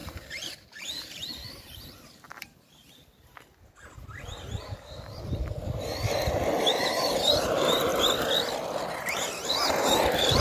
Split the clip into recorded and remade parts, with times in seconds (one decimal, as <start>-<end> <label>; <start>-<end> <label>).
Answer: 0.0-2.8 remade; 2.8-6.8 recorded; 6.8-7.9 remade; 7.9-8.9 recorded; 8.9-10.4 remade